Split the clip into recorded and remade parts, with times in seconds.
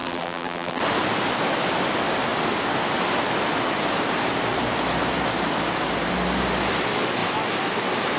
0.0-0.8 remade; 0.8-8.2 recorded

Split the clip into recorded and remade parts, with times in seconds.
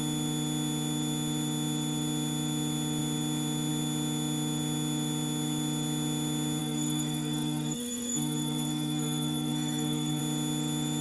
0.0-6.6 recorded; 6.6-10.2 remade; 10.2-11.0 recorded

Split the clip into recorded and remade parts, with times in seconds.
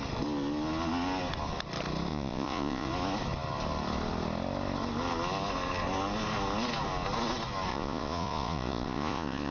0.0-2.1 recorded; 2.1-2.9 remade; 2.9-7.7 recorded; 7.7-9.5 remade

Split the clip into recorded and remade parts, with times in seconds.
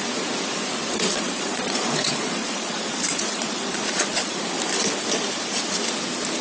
0.0-0.9 recorded; 0.9-4.4 remade; 4.4-6.4 recorded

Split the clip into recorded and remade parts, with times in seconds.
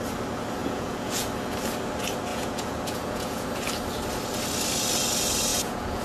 0.0-0.6 recorded; 0.6-1.3 remade; 1.3-2.3 recorded; 2.3-3.5 remade; 3.5-5.5 recorded; 5.5-6.0 remade